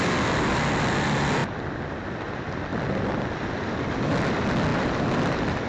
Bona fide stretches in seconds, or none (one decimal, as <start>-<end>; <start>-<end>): 0.0-5.7